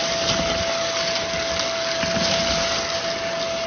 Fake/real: real